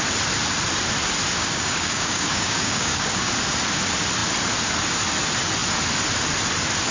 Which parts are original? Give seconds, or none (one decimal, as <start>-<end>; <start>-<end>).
0.0-1.4; 3.3-6.9